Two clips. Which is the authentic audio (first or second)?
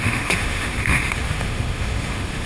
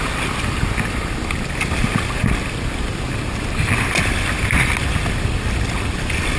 second